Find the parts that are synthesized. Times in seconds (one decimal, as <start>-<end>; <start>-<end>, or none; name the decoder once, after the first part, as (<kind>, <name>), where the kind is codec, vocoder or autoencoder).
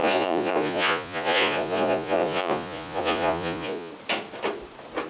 0.0-3.9 (vocoder, Vocos)